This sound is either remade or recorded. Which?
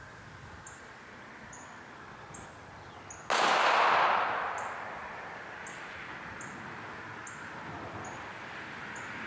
recorded